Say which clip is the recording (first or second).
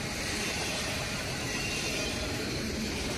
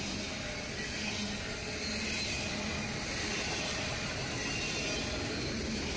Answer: second